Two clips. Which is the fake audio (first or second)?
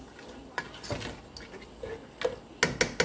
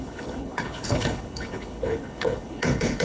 second